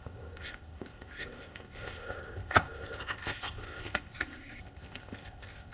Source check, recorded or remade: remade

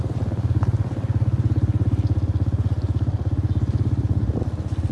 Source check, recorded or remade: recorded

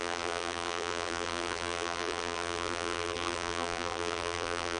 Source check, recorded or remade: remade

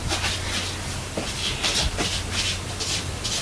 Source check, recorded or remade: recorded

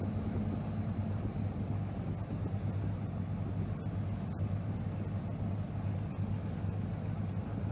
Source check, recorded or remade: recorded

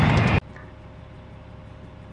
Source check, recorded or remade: recorded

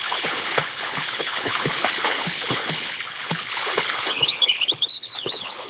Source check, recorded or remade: remade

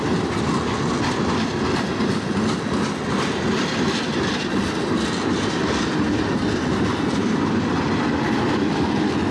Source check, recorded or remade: recorded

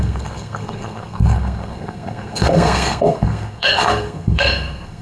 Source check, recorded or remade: remade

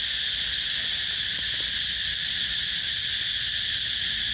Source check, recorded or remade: recorded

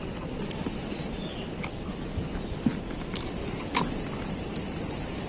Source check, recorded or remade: recorded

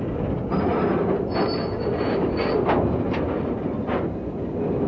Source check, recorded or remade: recorded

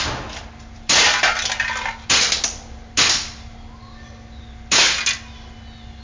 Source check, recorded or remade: recorded